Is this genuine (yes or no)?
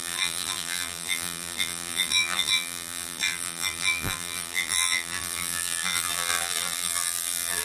no